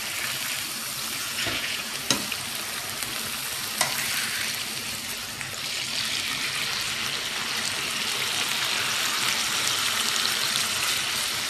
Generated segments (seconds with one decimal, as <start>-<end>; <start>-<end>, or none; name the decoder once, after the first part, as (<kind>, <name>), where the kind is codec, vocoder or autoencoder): 1.2-2.0 (vocoder, Vocos)